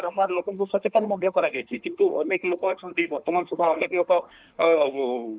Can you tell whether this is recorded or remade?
remade